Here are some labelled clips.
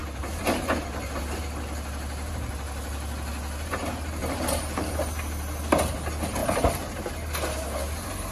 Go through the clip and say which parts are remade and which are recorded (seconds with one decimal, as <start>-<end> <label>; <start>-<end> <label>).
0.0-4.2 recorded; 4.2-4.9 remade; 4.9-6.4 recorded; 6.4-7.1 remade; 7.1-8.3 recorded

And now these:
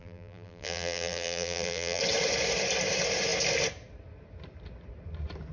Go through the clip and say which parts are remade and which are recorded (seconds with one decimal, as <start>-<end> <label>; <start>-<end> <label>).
0.0-2.0 remade; 2.0-5.5 recorded

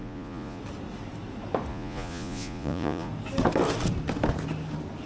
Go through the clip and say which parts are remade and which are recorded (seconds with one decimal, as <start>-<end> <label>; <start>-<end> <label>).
0.0-0.6 remade; 0.6-1.7 recorded; 1.7-3.1 remade; 3.1-5.1 recorded